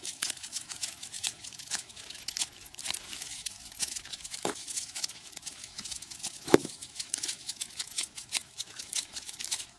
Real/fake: fake